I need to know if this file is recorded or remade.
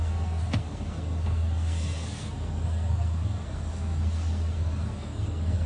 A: remade